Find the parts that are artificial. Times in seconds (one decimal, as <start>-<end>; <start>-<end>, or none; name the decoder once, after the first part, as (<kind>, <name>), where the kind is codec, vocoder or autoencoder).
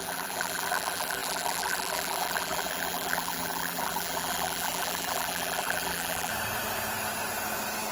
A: 0.0-6.3 (vocoder, BigVGAN v2)